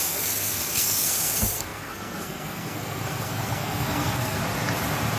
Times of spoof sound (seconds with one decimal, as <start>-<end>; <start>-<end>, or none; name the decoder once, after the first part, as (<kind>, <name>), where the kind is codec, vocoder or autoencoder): 0.0-4.4 (codec, SNAC)